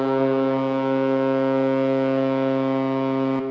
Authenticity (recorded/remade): recorded